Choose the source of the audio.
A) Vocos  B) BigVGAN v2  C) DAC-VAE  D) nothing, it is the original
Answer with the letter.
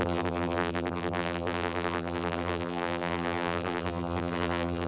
B